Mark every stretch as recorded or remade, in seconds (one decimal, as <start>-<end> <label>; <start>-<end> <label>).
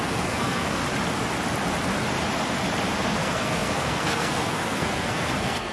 0.0-0.8 remade; 0.8-3.0 recorded; 3.0-5.7 remade